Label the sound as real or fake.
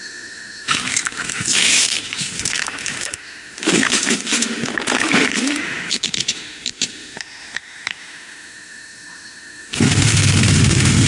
fake